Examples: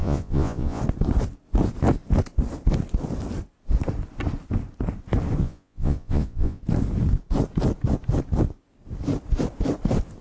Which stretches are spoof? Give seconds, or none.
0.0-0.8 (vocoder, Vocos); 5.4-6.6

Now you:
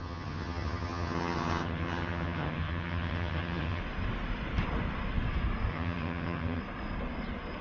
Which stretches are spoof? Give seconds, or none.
0.0-3.8 (vocoder, HiFi-GAN); 5.7-6.6

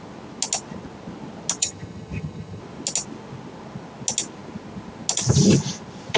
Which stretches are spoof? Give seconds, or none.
1.6-2.6 (vocoder, HiFi-GAN)